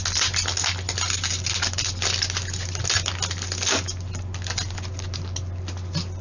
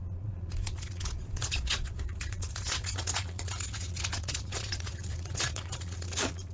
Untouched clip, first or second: first